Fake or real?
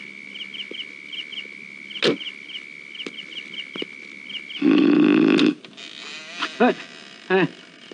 real